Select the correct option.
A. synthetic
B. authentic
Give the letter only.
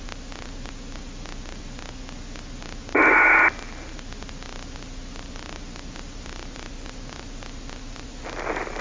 B